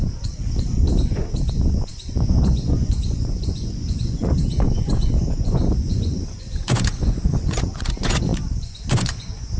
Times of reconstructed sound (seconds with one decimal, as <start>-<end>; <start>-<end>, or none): 0.0-9.6

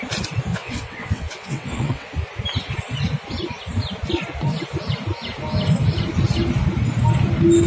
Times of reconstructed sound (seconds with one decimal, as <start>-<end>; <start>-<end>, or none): 0.5-2.1